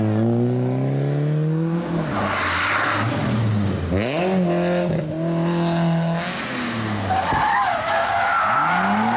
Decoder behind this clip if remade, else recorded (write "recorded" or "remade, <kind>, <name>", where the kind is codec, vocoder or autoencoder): recorded